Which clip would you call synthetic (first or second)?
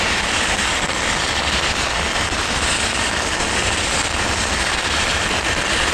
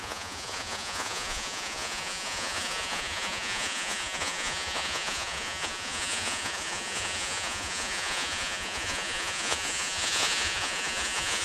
second